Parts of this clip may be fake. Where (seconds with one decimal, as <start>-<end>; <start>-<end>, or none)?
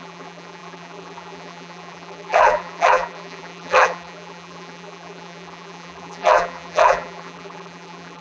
0.0-8.2